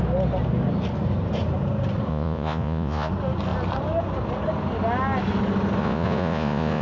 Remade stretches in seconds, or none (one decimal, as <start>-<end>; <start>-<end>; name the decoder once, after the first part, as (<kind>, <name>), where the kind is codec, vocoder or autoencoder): 2.1-3.1 (vocoder, Vocos); 5.8-6.8